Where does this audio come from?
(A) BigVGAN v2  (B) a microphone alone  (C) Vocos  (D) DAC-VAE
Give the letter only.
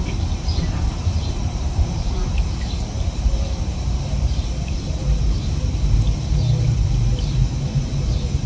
A